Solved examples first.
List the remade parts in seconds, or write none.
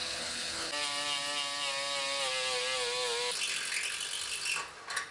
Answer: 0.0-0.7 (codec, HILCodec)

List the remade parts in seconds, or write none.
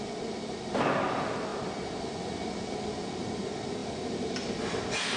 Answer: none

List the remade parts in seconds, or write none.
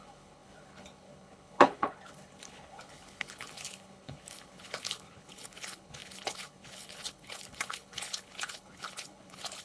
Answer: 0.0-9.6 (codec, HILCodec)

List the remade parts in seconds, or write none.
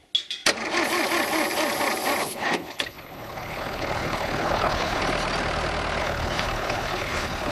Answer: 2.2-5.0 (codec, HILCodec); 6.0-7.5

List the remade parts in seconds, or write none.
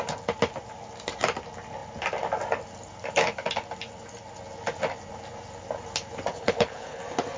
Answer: 6.3-7.0 (codec, HILCodec)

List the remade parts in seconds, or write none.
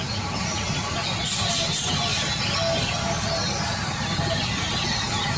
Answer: none